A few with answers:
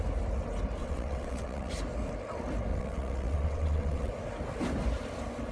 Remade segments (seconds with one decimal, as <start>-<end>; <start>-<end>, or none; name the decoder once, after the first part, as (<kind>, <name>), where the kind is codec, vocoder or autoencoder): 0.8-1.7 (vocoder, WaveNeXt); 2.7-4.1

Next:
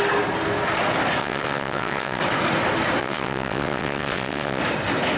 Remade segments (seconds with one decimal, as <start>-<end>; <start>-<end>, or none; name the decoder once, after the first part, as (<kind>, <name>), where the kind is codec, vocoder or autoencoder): 1.2-2.2 (vocoder, WaveNeXt); 3.0-4.6

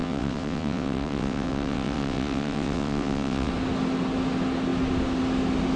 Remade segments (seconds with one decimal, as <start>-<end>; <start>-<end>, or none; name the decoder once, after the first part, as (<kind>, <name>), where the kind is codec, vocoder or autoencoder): 0.0-3.5 (vocoder, WaveNeXt)